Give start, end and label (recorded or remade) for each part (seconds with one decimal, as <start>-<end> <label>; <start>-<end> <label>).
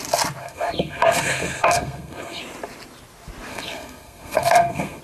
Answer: 0.0-0.4 recorded; 0.4-2.4 remade; 2.4-3.5 recorded; 3.5-5.0 remade